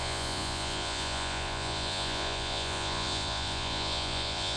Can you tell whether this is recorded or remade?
remade